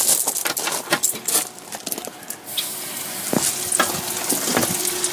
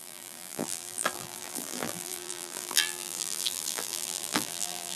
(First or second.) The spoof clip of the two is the second